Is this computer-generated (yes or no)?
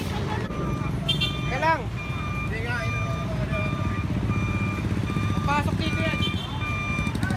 no